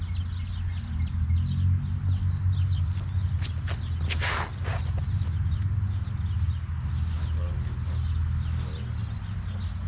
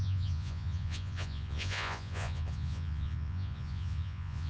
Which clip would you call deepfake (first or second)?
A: second